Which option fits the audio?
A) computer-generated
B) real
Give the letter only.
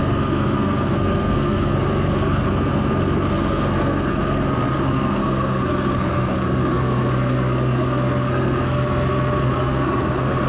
A